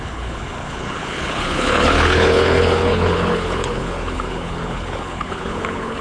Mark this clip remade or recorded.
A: remade